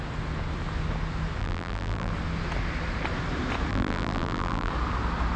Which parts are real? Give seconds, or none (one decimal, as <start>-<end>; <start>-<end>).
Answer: 0.0-1.4; 2.1-3.7; 4.7-5.4